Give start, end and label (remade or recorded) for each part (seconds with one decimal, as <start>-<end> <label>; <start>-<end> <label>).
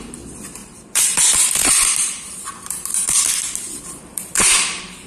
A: 0.0-0.6 recorded; 0.6-3.2 remade; 3.2-4.1 recorded; 4.1-5.1 remade